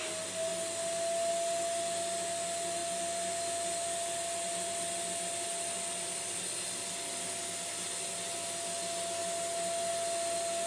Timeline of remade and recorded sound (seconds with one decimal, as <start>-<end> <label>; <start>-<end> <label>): 0.0-10.7 recorded

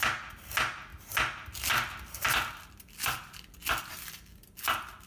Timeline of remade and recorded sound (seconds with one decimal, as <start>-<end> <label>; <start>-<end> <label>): 0.0-5.1 recorded

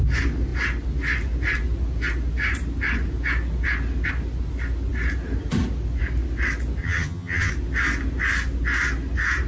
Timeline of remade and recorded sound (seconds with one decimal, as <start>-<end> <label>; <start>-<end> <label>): 0.0-6.8 recorded; 6.8-7.5 remade; 7.5-9.5 recorded